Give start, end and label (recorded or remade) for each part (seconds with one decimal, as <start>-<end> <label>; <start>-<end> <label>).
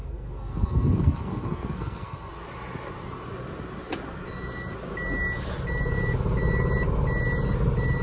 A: 0.0-2.3 remade; 2.3-8.0 recorded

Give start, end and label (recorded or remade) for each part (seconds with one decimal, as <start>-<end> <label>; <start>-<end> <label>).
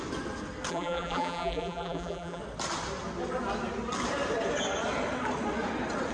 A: 0.0-0.7 recorded; 0.7-2.4 remade; 2.4-6.1 recorded